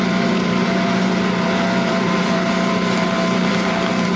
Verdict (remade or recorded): remade